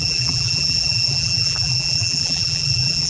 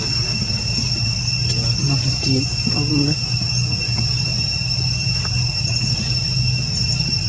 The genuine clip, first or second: second